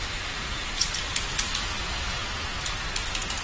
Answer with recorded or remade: recorded